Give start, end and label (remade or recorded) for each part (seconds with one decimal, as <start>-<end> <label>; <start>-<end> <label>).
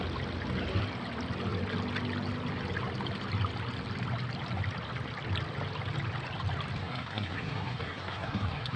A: 0.0-6.8 recorded; 6.8-8.8 remade